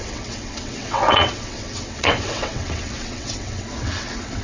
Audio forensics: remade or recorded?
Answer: remade